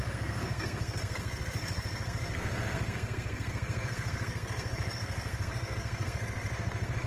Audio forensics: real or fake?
fake